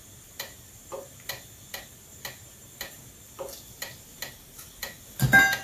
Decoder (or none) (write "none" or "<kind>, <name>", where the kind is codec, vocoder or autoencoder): none